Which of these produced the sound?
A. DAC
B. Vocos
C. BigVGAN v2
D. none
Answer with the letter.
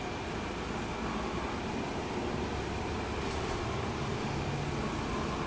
D